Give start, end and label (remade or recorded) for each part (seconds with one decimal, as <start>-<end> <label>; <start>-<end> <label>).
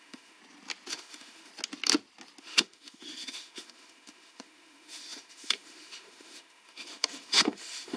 0.0-0.4 remade; 0.4-0.9 recorded; 0.9-1.5 remade; 1.5-2.4 recorded; 2.4-8.0 remade